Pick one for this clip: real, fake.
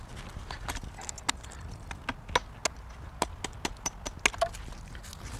real